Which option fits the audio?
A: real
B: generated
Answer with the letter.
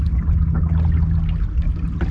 A